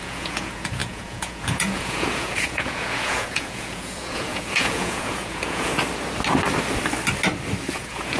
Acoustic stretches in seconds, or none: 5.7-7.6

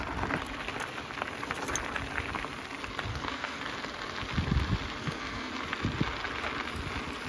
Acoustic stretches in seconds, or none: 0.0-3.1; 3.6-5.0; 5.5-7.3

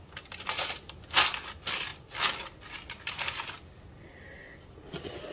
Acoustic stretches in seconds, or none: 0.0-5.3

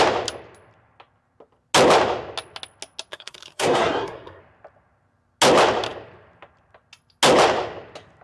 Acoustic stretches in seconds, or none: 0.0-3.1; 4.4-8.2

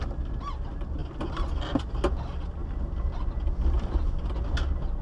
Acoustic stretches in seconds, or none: 0.0-5.0